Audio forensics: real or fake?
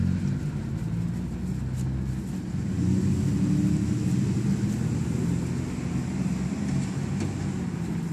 real